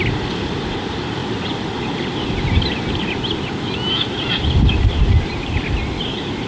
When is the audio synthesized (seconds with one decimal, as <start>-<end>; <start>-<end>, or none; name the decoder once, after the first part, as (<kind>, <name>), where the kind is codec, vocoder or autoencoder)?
none